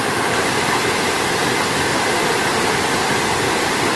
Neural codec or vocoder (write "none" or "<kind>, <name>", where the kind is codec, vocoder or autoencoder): none